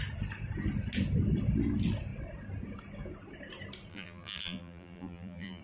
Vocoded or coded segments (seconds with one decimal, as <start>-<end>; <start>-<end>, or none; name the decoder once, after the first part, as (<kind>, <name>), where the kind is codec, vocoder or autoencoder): 3.9-5.6 (vocoder, BigVGAN v2)